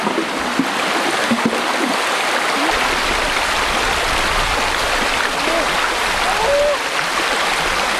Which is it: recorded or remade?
recorded